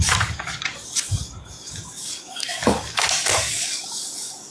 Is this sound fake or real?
fake